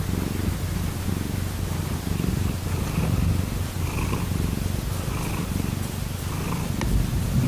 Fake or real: fake